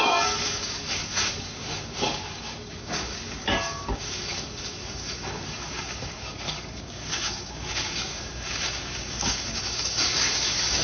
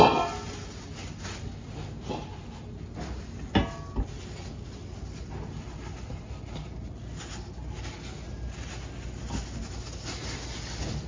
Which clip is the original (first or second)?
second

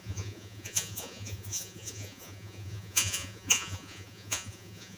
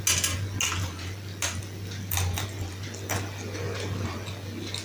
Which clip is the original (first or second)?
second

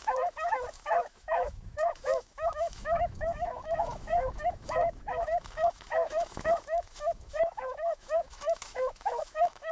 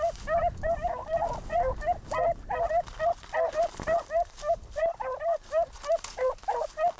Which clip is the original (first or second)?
second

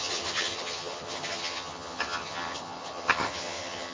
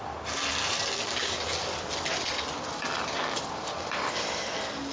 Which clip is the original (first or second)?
second